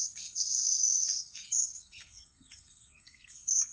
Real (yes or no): no